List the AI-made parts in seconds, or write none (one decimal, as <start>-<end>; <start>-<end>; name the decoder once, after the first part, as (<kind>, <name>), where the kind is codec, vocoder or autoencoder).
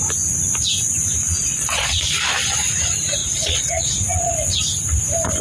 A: 1.2-2.0 (vocoder, Vocos); 3.2-4.6